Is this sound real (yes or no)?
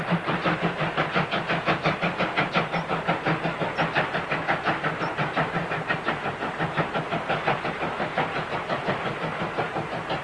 yes